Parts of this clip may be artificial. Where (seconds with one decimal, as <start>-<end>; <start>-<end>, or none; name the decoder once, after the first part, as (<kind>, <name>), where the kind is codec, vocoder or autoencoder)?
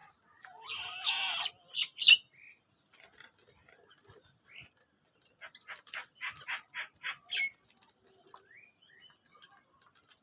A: none